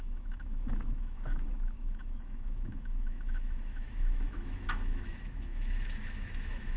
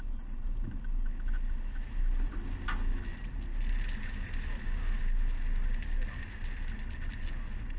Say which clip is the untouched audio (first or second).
second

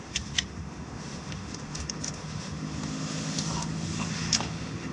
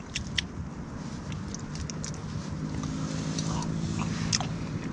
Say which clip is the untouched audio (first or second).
second